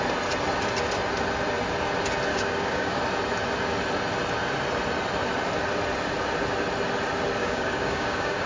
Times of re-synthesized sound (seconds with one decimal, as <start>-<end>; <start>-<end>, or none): 2.3-3.0; 7.4-8.5